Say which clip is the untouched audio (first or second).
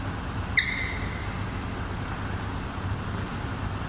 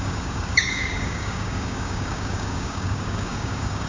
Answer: first